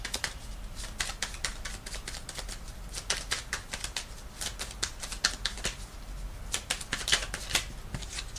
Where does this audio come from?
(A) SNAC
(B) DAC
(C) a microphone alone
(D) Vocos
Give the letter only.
C